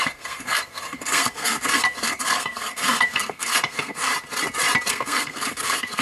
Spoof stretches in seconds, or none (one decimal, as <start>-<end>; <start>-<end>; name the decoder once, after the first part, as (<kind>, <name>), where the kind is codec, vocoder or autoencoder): 0.0-4.1 (codec, SNAC); 4.9-6.0